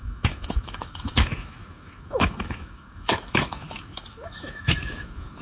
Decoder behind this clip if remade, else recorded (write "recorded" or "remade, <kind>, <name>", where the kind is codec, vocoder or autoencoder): remade, autoencoder, DAC-VAE